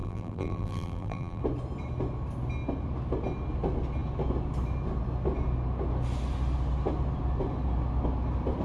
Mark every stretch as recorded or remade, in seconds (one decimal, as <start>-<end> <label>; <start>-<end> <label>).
0.0-1.4 remade; 1.4-8.6 recorded

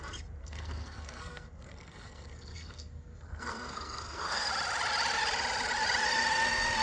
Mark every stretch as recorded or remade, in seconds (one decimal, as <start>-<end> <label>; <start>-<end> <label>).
0.0-0.4 recorded; 0.4-4.5 remade; 4.5-6.8 recorded

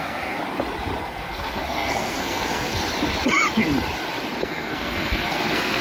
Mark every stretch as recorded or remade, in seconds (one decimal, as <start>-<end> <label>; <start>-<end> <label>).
0.0-0.4 remade; 0.4-1.0 recorded; 1.0-2.8 remade; 2.8-4.4 recorded; 4.4-5.8 remade

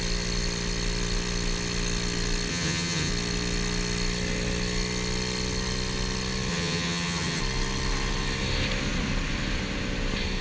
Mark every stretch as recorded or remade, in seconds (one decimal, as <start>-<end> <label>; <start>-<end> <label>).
0.0-2.5 recorded; 2.5-3.1 remade; 3.1-6.5 recorded; 6.5-7.4 remade; 7.4-10.4 recorded

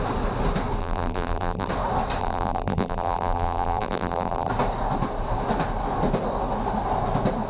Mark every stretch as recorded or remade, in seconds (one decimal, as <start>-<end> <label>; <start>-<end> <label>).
0.0-0.8 recorded; 0.8-1.7 remade; 1.7-2.2 recorded; 2.2-4.5 remade; 4.5-7.5 recorded